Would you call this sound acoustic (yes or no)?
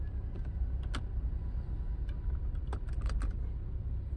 yes